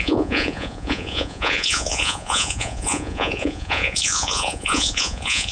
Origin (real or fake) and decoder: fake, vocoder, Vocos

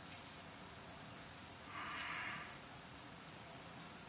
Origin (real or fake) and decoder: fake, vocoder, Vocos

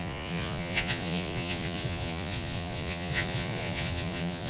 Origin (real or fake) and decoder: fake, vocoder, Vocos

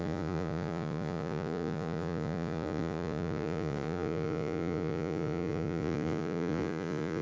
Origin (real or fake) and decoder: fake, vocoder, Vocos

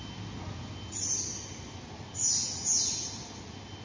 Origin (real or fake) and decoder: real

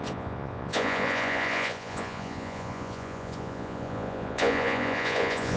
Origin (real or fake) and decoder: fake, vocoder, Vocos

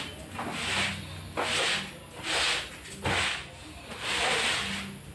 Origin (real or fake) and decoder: real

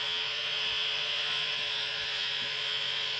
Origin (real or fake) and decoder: fake, vocoder, Vocos